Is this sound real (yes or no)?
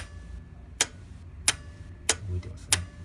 yes